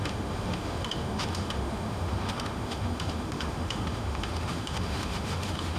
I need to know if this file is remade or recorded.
remade